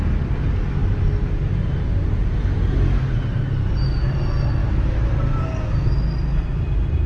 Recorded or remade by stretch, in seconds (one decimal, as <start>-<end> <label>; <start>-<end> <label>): 0.0-4.6 recorded; 4.6-5.1 remade; 5.1-7.1 recorded